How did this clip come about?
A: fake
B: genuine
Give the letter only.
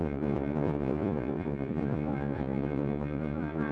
A